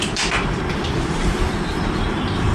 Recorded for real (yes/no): yes